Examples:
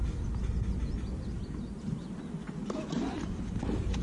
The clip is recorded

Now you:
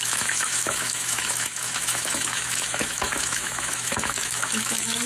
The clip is remade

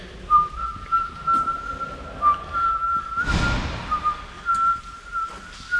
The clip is recorded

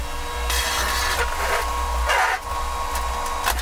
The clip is recorded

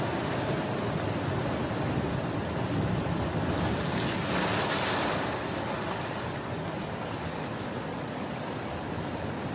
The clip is recorded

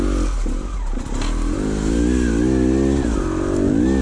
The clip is recorded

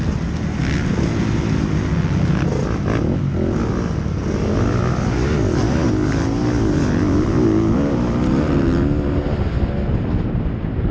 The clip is recorded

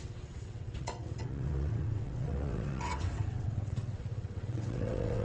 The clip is remade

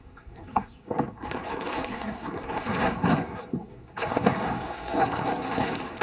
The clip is remade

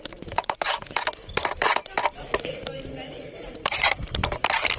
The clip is remade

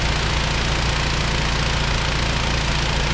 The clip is recorded